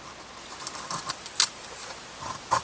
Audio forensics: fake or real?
real